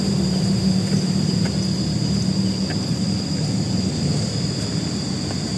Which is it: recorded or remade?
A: recorded